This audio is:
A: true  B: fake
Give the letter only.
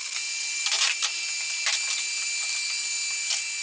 A